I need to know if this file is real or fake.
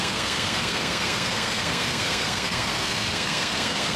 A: fake